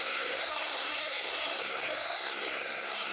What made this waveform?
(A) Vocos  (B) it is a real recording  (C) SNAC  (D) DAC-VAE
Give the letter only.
C